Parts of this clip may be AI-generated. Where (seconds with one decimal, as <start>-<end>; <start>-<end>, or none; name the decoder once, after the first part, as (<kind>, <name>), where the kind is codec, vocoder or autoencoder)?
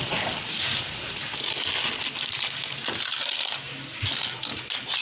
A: none